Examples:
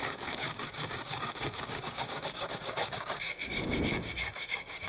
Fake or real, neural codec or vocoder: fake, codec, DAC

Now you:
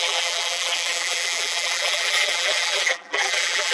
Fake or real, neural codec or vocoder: fake, vocoder, BigVGAN v2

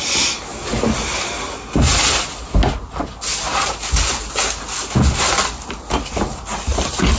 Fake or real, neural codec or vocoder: real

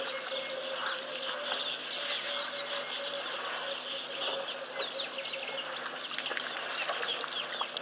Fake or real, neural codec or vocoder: real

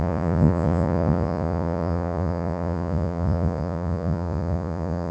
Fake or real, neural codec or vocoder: fake, vocoder, Vocos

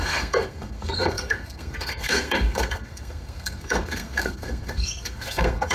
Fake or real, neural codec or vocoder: fake, codec, SNAC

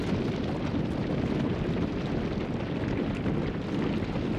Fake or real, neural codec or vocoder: real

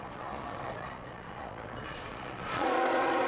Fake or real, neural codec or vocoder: fake, vocoder, Vocos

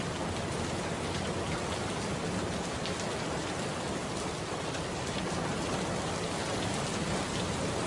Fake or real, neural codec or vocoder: real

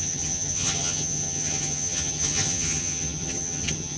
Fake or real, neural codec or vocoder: fake, vocoder, HiFi-GAN